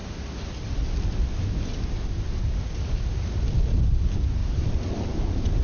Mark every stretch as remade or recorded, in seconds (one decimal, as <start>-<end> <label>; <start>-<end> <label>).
0.0-4.4 recorded; 4.4-5.1 remade; 5.1-5.6 recorded